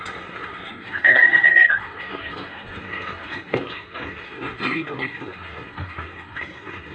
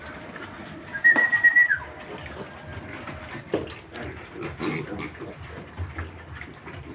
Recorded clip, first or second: second